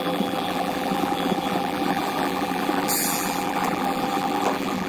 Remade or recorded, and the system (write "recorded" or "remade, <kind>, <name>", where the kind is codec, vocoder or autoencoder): remade, vocoder, BigVGAN v2